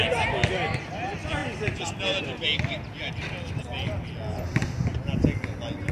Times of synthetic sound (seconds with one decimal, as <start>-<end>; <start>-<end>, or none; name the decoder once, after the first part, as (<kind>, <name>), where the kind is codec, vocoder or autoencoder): none